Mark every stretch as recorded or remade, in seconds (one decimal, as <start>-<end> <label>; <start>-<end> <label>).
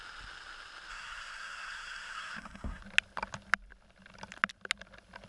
0.0-0.9 recorded; 0.9-2.8 remade; 2.8-5.3 recorded